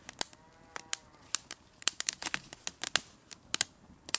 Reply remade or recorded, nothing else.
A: recorded